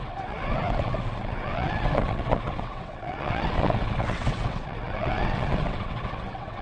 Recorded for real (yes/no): no